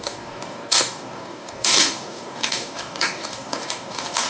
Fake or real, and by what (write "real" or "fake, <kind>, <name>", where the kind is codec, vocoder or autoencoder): fake, codec, DAC